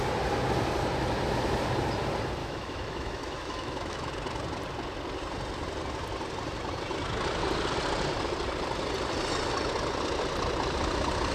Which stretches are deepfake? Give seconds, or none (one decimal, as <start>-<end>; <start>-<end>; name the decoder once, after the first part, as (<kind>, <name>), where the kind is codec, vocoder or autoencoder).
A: 2.4-4.1 (autoencoder, DAC-VAE)